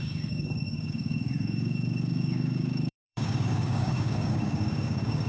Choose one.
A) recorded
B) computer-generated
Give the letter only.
B